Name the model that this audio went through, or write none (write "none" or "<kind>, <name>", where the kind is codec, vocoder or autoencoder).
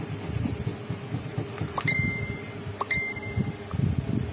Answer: none